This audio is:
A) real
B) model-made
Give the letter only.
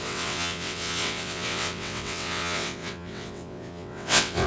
B